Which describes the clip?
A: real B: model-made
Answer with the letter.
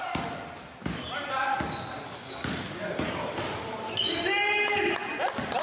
A